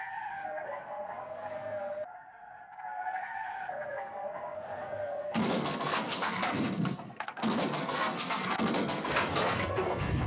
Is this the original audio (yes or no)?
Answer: no